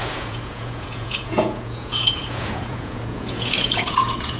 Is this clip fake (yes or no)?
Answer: yes